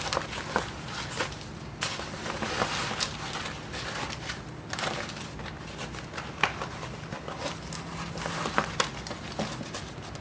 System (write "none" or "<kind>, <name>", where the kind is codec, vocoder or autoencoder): none